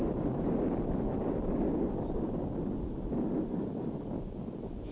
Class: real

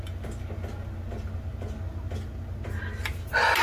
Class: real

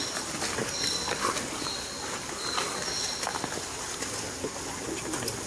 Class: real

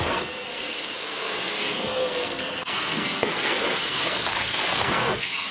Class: fake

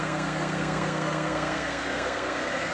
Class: fake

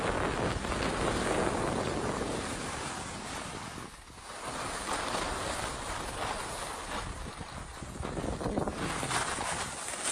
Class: real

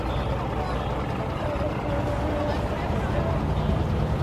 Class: real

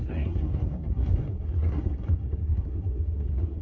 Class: fake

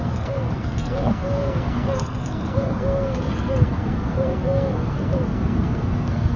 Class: fake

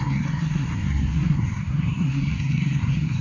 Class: fake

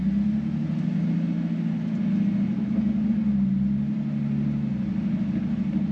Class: real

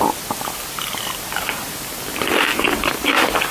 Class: real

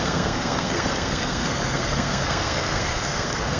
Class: fake